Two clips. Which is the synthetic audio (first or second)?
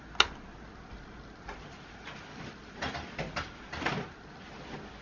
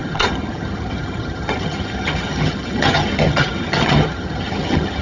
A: second